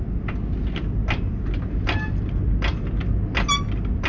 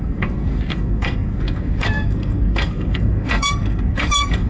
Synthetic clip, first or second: second